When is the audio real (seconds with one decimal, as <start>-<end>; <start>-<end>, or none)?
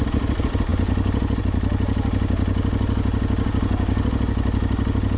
0.0-5.2